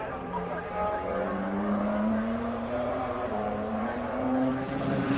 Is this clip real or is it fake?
fake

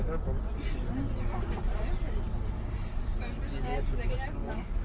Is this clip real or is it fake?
real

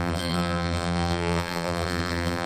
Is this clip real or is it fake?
fake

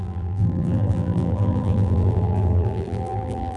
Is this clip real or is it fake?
fake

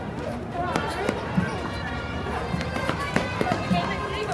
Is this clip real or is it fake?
fake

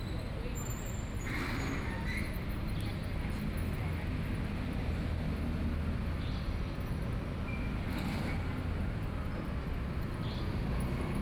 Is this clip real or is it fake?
real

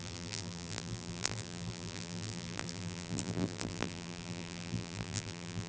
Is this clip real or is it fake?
fake